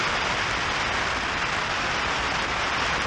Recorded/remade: recorded